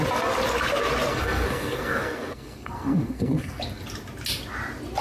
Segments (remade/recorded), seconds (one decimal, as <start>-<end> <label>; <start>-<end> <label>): 0.0-1.1 recorded; 1.1-3.6 remade; 3.6-5.0 recorded